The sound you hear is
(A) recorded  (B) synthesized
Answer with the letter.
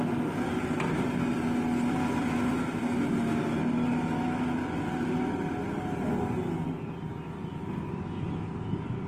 A